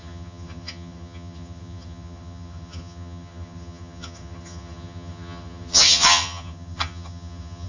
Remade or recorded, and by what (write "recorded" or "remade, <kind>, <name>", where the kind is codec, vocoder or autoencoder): remade, vocoder, HiFi-GAN